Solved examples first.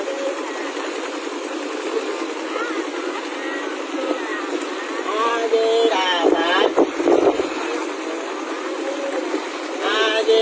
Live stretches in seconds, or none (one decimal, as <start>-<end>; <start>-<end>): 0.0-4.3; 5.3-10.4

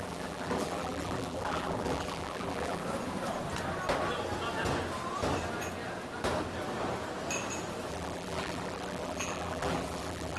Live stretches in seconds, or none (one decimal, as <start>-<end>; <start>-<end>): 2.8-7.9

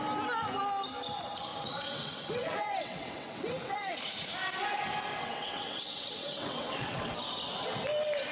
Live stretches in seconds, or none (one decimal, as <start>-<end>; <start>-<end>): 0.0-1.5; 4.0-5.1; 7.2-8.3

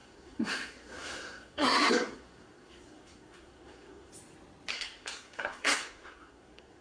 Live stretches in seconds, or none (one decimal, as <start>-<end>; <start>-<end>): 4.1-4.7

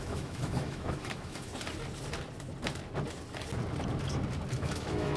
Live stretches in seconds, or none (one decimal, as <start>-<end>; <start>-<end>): 1.5-4.6

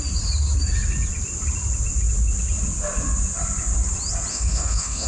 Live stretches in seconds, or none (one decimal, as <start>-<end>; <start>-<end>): 0.0-4.3

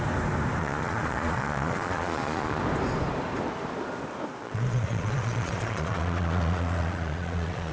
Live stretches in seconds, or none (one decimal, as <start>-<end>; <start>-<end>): 0.0-0.6; 2.6-4.4